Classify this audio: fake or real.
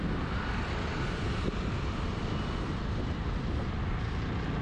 fake